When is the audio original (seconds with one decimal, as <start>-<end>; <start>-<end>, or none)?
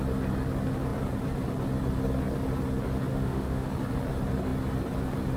0.0-3.1; 3.7-5.4